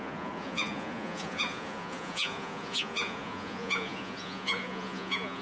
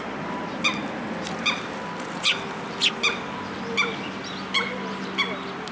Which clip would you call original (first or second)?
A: second